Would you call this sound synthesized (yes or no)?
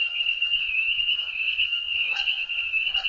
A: yes